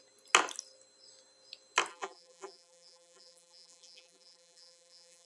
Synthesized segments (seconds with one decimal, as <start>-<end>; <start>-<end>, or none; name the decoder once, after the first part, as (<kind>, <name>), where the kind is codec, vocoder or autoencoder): 1.9-5.3 (vocoder, BigVGAN v2)